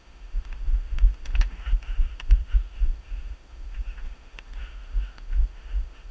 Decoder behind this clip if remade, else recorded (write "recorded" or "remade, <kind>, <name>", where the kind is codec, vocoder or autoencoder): remade, autoencoder, DAC-VAE